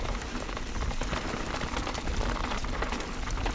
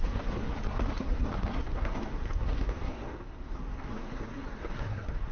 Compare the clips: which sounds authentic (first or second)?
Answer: first